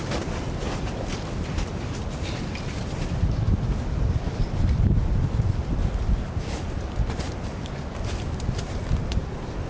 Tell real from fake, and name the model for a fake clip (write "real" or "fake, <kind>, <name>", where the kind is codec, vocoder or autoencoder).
real